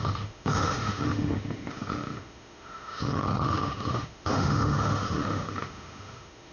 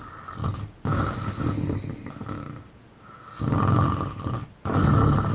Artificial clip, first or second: first